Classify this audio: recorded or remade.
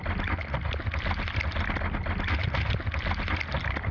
recorded